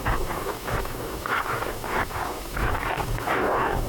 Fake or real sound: fake